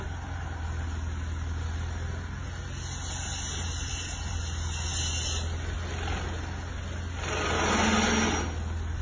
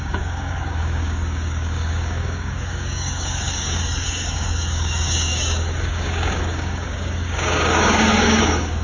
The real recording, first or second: first